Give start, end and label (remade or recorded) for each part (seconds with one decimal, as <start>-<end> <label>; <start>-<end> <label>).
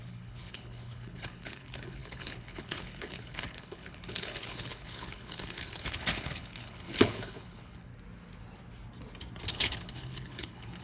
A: 0.0-7.9 remade; 7.9-9.5 recorded; 9.5-10.8 remade